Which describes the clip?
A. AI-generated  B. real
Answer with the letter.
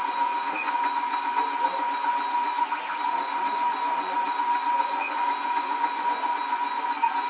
A